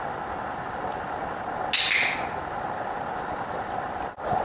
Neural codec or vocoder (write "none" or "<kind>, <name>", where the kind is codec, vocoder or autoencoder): none